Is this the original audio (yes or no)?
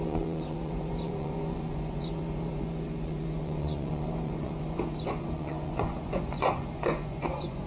no